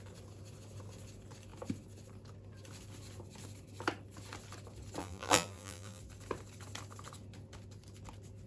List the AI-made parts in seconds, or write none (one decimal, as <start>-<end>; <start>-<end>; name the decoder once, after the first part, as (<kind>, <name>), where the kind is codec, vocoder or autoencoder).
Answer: 5.0-6.0 (vocoder, BigVGAN v2)